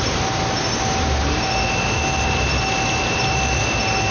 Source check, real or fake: real